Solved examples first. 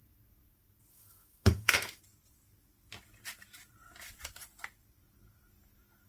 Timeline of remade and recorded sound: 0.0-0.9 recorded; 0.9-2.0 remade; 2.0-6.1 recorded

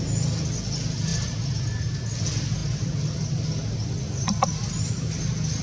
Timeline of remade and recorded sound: 0.0-5.6 recorded

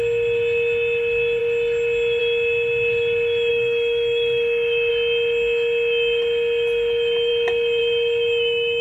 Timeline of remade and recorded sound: 0.0-3.5 recorded; 3.5-4.9 remade; 4.9-8.8 recorded

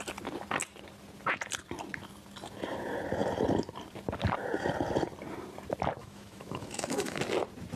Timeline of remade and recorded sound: 0.0-6.0 recorded; 6.0-7.2 remade; 7.2-7.8 recorded

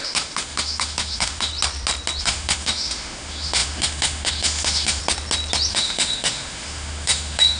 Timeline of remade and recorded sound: 0.0-1.5 remade; 1.5-2.2 recorded; 2.2-5.0 remade; 5.0-5.7 recorded; 5.7-7.6 remade

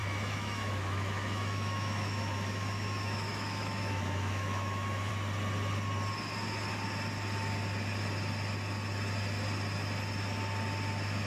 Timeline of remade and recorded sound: 0.0-5.1 remade; 5.1-11.3 recorded

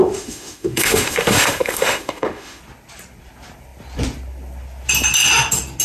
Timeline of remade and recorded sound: 0.0-2.6 remade; 2.6-5.8 recorded